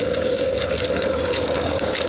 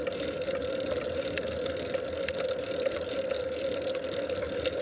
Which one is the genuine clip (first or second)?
second